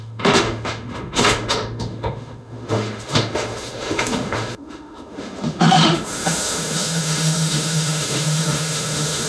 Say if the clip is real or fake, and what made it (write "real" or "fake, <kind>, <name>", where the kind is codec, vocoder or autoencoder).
fake, autoencoder, DAC-VAE